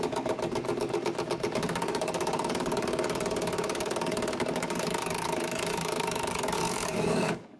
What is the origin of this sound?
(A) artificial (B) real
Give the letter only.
A